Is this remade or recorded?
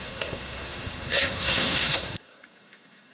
remade